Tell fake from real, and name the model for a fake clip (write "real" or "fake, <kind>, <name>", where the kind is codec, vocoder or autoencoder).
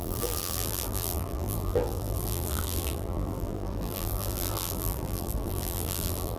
fake, vocoder, BigVGAN v2